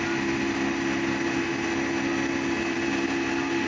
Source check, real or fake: real